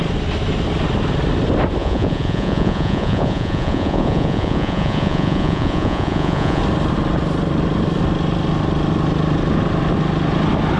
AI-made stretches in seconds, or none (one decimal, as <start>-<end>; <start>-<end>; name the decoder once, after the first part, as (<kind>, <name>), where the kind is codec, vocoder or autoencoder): 1.8-6.6 (vocoder, Vocos)